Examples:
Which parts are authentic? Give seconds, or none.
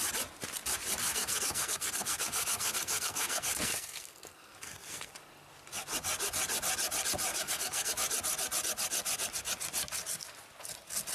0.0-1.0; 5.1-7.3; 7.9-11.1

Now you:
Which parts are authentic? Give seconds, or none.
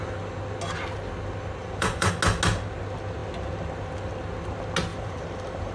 0.0-1.6; 2.1-4.9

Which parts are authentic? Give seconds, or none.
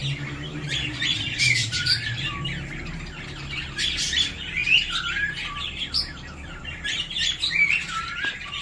0.0-8.6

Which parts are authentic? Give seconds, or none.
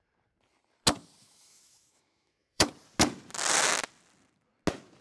0.0-1.2; 2.7-5.0